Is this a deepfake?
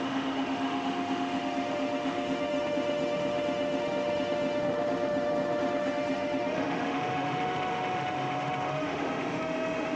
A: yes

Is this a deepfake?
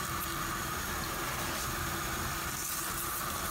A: no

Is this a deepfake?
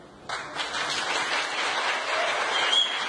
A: no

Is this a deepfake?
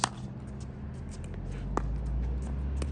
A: no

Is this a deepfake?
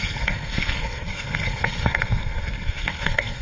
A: yes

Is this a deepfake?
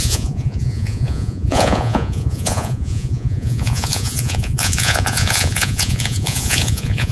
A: yes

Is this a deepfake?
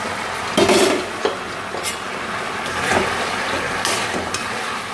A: no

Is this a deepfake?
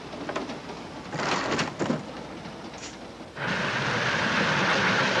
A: no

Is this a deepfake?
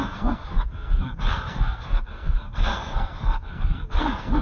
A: yes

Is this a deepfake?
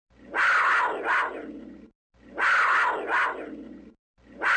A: no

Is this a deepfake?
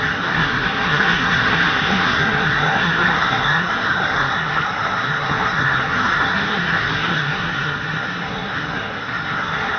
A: yes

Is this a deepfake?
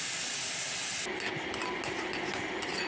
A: no